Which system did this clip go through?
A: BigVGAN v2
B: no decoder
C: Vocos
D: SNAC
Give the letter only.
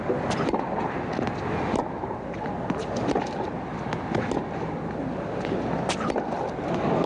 B